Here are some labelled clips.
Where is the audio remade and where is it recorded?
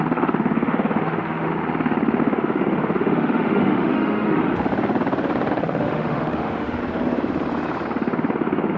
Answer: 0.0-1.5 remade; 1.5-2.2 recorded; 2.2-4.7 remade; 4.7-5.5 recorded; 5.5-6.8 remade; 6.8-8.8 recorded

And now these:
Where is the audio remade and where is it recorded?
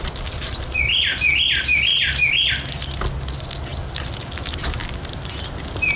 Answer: 0.0-6.0 recorded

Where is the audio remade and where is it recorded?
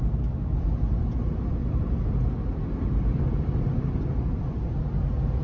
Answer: 0.0-1.6 recorded; 1.6-4.8 remade; 4.8-5.4 recorded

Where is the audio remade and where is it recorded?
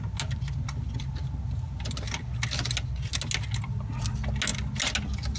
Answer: 0.0-5.4 recorded